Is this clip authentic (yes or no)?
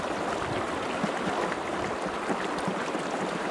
yes